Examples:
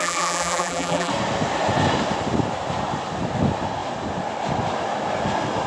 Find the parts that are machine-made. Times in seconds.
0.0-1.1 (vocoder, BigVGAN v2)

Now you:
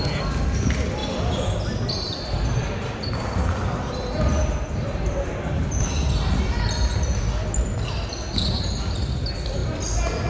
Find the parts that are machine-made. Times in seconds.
1.0-6.1 (vocoder, BigVGAN v2)

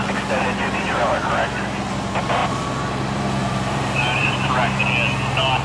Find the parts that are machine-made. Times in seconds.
2.4-4.8 (vocoder, BigVGAN v2)

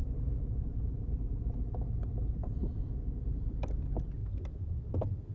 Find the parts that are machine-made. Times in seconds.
0.0-1.6 (vocoder, BigVGAN v2); 4.2-4.8

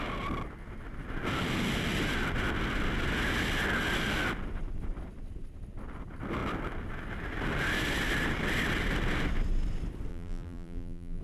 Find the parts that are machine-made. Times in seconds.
10.1-11.2 (vocoder, BigVGAN v2)

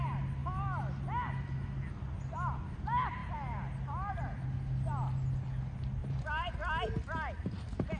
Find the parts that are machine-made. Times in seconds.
6.0-6.5 (vocoder, BigVGAN v2)